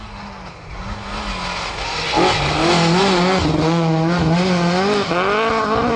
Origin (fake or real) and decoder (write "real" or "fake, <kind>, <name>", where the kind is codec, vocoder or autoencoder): real